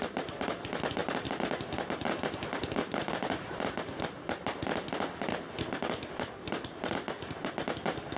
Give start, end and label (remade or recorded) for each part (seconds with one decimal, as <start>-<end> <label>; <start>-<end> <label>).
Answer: 0.0-8.2 recorded